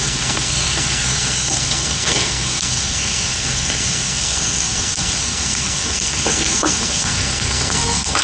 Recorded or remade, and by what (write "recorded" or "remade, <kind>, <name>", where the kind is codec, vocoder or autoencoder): remade, codec, SNAC